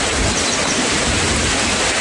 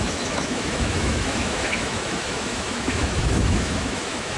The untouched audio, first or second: first